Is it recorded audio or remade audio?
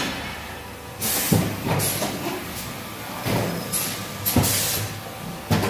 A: recorded